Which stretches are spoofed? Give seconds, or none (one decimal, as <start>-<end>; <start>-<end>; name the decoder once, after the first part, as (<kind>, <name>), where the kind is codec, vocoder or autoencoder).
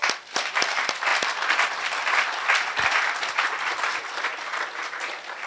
0.0-1.1 (vocoder, BigVGAN v2); 2.2-4.3